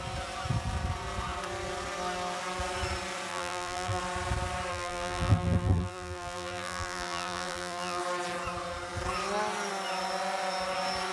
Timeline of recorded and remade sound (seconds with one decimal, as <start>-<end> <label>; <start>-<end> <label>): 0.0-3.3 recorded; 3.3-4.0 remade; 4.0-4.7 recorded; 4.7-8.0 remade; 8.0-11.1 recorded